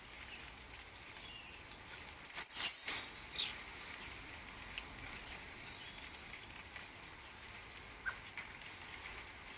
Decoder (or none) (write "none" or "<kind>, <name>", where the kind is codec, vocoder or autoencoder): none